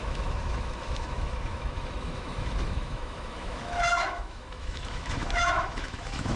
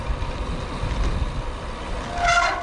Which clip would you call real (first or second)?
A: second